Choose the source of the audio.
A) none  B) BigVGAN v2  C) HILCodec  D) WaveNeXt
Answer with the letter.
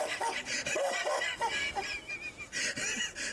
A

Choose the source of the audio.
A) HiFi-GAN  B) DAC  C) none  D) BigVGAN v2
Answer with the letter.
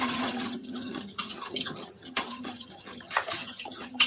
A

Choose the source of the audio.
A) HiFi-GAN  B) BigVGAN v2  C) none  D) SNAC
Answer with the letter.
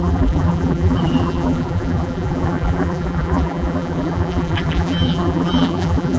B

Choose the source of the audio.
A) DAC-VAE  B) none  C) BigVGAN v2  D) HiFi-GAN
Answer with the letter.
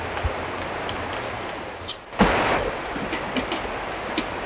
B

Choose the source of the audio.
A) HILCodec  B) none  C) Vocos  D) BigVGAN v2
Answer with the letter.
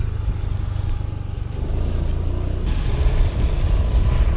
B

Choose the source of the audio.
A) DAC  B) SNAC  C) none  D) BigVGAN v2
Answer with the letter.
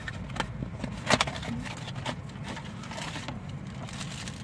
C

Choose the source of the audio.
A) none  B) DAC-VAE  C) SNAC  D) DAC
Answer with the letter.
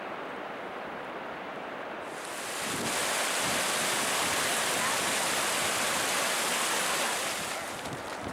A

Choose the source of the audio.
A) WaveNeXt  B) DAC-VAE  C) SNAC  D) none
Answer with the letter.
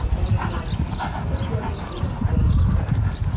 D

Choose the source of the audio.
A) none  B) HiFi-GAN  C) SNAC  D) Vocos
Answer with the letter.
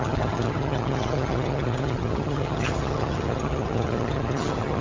B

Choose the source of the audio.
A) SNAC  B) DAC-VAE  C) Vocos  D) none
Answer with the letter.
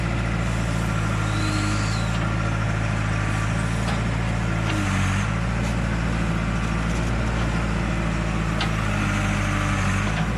D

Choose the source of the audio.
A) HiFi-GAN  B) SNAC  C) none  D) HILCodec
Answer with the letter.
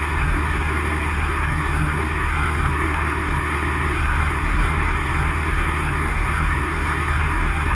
B